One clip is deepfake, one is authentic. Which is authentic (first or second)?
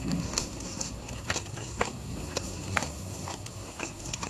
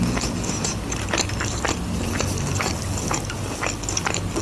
second